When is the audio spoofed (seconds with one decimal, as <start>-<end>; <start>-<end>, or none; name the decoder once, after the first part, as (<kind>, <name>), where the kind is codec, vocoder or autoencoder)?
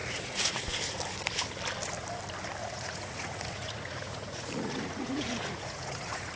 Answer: 0.0-0.6 (vocoder, Vocos); 2.6-6.4